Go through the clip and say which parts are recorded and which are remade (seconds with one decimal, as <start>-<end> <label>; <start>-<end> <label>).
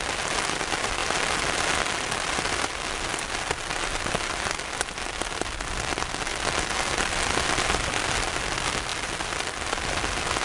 0.0-10.4 recorded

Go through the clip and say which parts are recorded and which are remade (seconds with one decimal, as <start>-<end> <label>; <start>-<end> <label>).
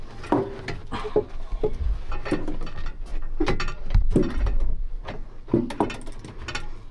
0.0-6.9 recorded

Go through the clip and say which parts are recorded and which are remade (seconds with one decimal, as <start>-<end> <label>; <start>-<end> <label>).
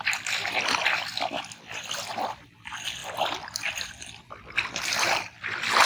0.0-3.0 recorded; 3.0-5.5 remade; 5.5-5.9 recorded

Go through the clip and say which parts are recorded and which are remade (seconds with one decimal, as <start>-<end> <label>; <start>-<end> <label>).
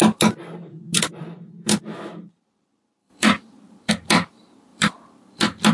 0.0-3.0 recorded; 3.0-3.9 remade; 3.9-4.7 recorded; 4.7-5.7 remade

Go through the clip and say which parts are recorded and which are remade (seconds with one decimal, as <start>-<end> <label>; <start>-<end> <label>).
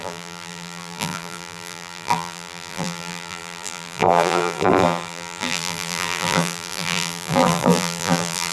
0.0-8.5 remade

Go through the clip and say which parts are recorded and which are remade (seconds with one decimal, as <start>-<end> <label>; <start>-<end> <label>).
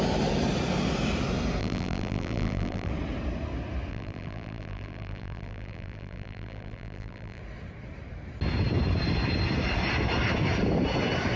0.0-1.6 recorded; 1.6-2.9 remade; 2.9-3.9 recorded; 3.9-7.4 remade; 7.4-11.4 recorded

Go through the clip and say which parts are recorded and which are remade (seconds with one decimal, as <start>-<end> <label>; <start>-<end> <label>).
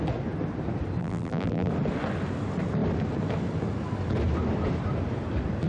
0.0-1.0 recorded; 1.0-1.7 remade; 1.7-5.7 recorded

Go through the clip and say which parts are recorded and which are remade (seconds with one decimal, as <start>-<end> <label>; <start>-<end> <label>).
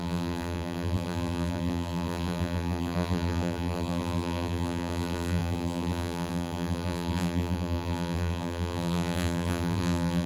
0.0-10.3 remade